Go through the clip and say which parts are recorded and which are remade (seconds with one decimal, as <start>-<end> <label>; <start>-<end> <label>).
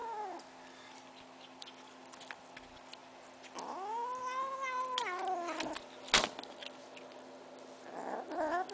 0.0-8.7 recorded